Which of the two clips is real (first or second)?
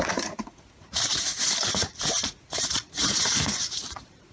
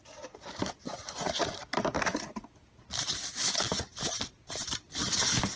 second